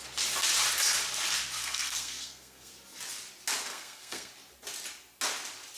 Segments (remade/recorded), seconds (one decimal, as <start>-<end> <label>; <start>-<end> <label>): 0.0-1.6 recorded; 1.6-2.7 remade; 2.7-3.7 recorded; 3.7-4.3 remade; 4.3-5.8 recorded